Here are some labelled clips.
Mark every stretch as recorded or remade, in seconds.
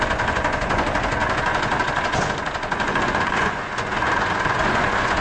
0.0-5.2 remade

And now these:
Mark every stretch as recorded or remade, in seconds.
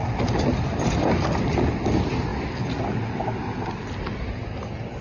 0.0-5.0 recorded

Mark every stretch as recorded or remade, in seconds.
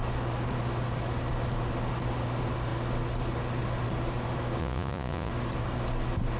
0.0-4.6 recorded; 4.6-5.3 remade; 5.3-6.4 recorded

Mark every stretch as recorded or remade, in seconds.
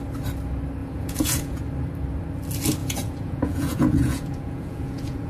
0.0-0.8 recorded; 0.8-1.6 remade; 1.6-2.8 recorded; 2.8-5.3 remade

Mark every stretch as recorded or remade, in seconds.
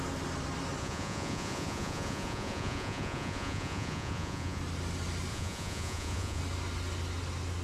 0.0-0.8 recorded; 0.8-4.6 remade; 4.6-5.3 recorded; 5.3-6.4 remade; 6.4-7.6 recorded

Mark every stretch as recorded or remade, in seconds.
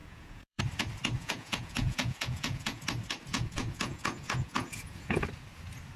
0.0-0.6 remade; 0.6-1.2 recorded; 1.2-2.8 remade; 2.8-3.3 recorded; 3.3-5.2 remade; 5.2-6.0 recorded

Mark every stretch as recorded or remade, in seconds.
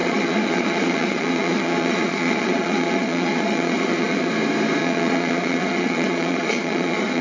0.0-4.3 remade; 4.3-4.8 recorded; 4.8-7.2 remade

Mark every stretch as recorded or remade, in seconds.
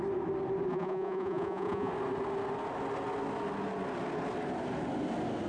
0.0-0.7 recorded; 0.7-1.9 remade; 1.9-5.5 recorded